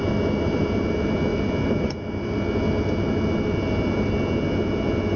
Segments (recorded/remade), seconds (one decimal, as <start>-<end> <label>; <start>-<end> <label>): 0.0-5.2 recorded